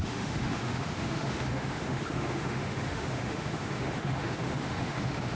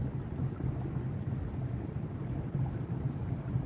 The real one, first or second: second